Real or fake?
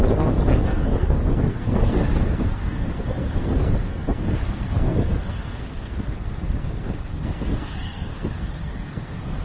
fake